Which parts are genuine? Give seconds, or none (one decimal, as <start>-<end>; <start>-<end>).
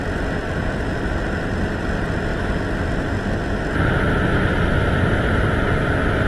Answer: 0.0-6.3